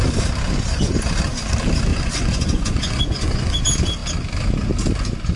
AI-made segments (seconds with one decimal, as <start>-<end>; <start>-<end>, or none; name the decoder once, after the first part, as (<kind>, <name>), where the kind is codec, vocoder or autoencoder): 1.9-3.6 (vocoder, Vocos)